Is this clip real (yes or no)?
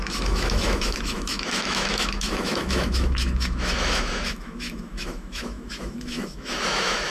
no